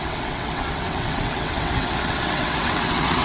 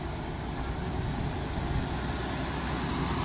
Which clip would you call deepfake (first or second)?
first